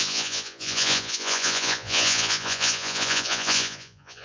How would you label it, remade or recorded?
remade